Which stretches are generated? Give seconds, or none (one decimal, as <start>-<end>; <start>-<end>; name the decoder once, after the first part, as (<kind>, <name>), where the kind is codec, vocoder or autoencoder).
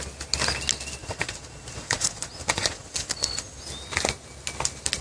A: 1.0-3.6 (vocoder, Vocos)